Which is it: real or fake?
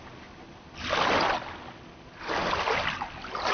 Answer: real